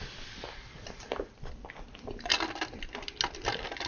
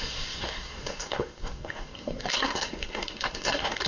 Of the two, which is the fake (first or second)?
second